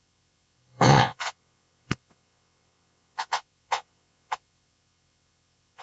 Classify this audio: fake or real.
fake